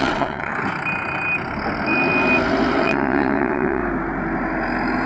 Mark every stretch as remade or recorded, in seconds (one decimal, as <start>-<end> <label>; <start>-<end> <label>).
0.0-0.5 remade; 0.5-2.8 recorded; 2.8-3.8 remade; 3.8-5.1 recorded